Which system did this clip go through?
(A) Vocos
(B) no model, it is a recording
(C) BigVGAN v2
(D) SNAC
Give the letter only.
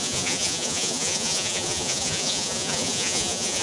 A